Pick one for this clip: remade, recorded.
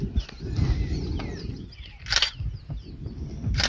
recorded